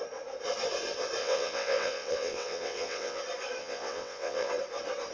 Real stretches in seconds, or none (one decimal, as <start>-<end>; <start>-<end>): 0.0-1.2; 3.2-3.6; 4.5-5.1